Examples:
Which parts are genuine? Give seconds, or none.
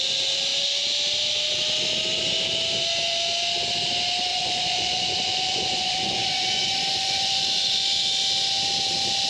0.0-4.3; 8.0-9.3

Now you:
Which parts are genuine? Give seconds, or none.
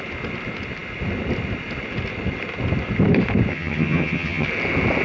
0.0-3.5; 4.5-5.0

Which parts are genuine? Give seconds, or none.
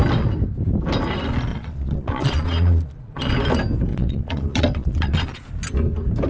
0.0-1.5; 3.3-3.9; 5.5-6.3